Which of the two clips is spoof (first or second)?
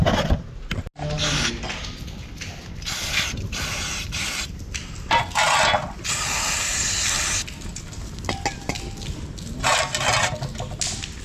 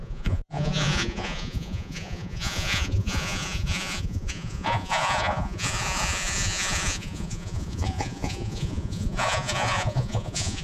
second